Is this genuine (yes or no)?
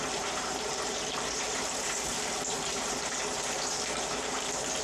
no